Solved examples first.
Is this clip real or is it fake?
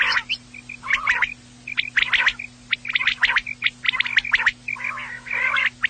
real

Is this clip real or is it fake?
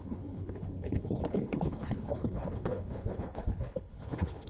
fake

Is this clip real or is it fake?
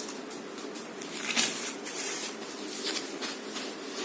real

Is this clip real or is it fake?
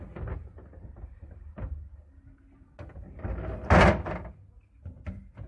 real